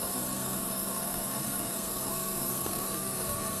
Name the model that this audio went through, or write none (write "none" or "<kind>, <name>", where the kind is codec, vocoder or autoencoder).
codec, SNAC